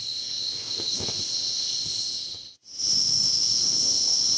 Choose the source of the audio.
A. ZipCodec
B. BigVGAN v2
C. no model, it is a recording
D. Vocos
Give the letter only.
A